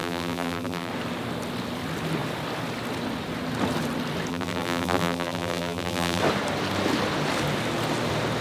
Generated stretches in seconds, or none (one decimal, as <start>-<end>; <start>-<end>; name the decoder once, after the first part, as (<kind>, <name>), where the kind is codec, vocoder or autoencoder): 0.0-0.9 (vocoder, BigVGAN v2); 4.3-6.2